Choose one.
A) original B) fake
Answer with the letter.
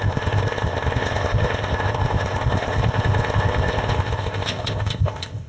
B